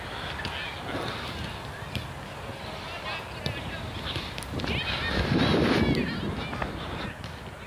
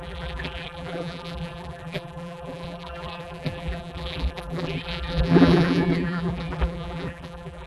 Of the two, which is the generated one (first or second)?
second